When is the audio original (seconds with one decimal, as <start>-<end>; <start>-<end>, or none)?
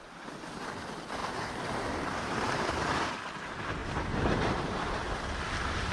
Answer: 0.0-1.2; 3.2-3.8; 5.0-5.9